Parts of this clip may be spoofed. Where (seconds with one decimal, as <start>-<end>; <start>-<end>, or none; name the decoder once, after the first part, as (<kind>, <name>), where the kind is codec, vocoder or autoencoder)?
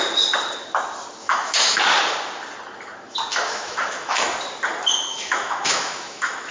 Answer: 1.2-1.8 (autoencoder, DAC-VAE); 3.3-4.4; 5.1-6.5